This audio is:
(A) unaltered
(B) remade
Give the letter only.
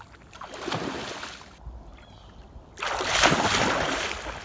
A